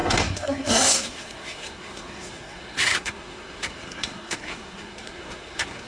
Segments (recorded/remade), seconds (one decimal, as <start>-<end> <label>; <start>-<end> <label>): 0.0-5.9 remade